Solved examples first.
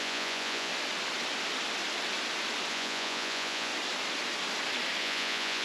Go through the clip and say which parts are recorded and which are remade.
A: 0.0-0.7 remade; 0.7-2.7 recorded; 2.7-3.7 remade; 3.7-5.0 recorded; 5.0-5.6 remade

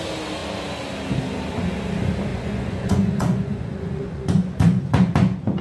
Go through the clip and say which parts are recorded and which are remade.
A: 0.0-2.3 recorded; 2.3-5.6 remade

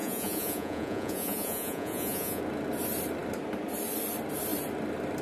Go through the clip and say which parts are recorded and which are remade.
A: 0.0-2.4 remade; 2.4-5.2 recorded